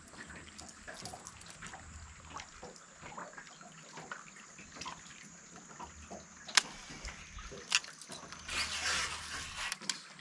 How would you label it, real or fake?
real